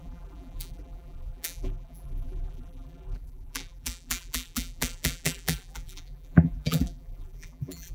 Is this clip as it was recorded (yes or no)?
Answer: no